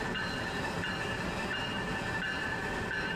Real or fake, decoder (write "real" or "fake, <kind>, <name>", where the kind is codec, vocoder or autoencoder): real